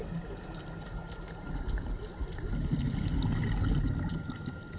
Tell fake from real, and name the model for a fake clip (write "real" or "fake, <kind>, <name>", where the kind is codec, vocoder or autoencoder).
real